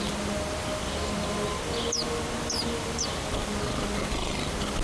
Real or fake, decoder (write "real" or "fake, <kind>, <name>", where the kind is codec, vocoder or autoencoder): fake, vocoder, BigVGAN v2